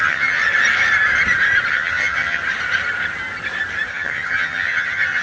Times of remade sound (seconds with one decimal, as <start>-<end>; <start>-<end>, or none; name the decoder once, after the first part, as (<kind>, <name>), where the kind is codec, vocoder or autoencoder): 0.0-0.4 (vocoder, HiFi-GAN); 1.7-2.4; 3.9-5.2